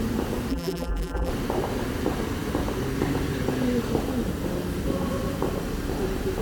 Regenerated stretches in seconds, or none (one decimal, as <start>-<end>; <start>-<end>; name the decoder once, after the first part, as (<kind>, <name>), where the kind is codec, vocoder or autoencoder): 0.5-1.3 (vocoder, BigVGAN v2)